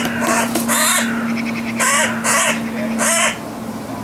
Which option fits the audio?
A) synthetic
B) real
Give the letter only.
B